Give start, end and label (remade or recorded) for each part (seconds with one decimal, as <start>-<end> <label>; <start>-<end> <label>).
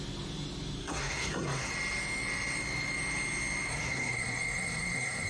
0.0-0.8 recorded; 0.8-1.7 remade; 1.7-3.7 recorded; 3.7-5.3 remade